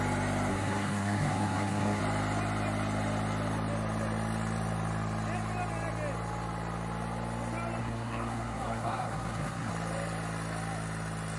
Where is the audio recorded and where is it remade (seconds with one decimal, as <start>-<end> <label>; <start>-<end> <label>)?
0.0-0.5 recorded; 0.5-2.0 remade; 2.0-7.8 recorded; 7.8-9.7 remade; 9.7-11.4 recorded